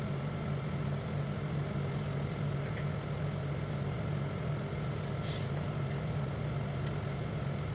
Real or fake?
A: real